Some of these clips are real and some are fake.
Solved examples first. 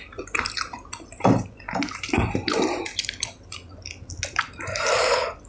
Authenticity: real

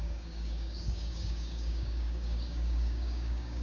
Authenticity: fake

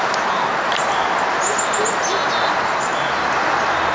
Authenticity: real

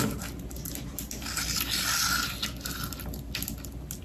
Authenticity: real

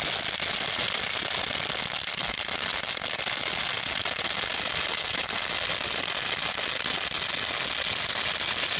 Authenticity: real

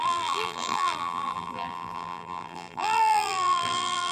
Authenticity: fake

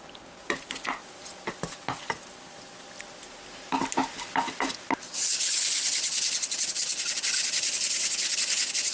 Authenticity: real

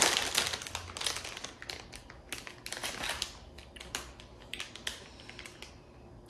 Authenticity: real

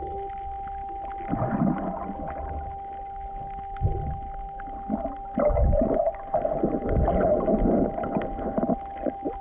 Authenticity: real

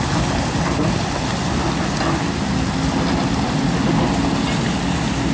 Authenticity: real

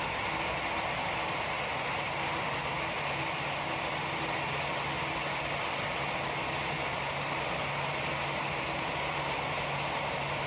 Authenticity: real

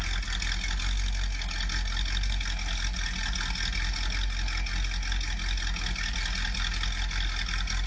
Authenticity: real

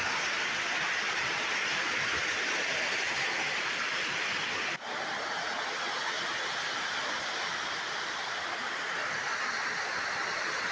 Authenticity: real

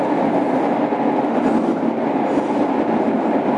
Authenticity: real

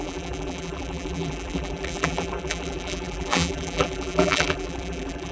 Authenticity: fake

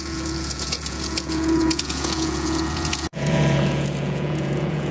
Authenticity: fake